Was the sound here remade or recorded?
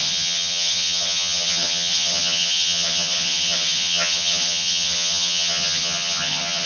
remade